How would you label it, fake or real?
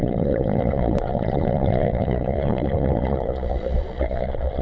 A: fake